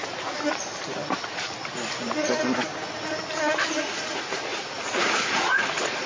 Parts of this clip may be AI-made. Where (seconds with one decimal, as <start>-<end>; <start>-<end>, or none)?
3.7-6.1